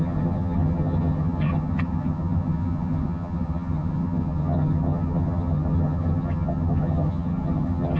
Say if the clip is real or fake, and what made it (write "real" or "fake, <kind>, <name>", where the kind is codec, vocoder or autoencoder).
fake, vocoder, HiFi-GAN